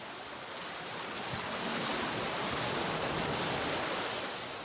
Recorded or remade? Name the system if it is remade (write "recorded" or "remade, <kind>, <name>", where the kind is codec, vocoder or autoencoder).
recorded